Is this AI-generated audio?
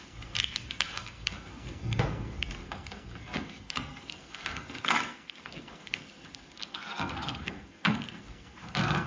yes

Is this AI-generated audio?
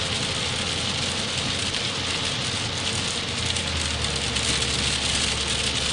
no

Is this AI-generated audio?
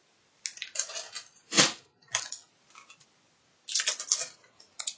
no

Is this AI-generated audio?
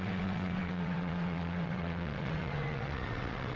yes